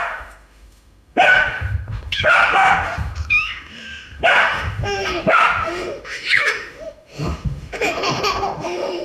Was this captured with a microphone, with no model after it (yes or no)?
no